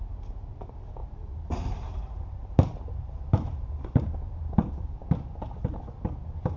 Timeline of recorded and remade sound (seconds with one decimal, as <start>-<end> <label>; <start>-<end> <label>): 0.0-1.0 recorded; 1.0-5.0 remade; 5.0-6.6 recorded